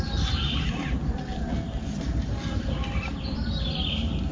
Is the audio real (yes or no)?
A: yes